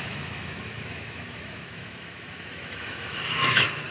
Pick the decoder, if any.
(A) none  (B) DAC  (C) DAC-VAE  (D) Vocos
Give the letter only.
C